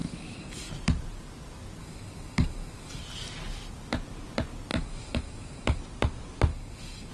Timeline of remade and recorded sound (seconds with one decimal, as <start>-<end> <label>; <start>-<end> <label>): 0.0-0.7 remade; 0.7-1.8 recorded; 1.8-3.0 remade; 3.0-4.7 recorded; 4.7-5.8 remade; 5.8-6.5 recorded; 6.5-7.1 remade